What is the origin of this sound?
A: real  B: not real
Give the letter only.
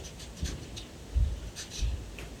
B